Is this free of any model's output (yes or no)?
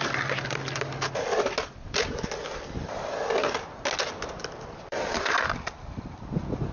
yes